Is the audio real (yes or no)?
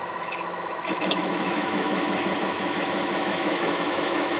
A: no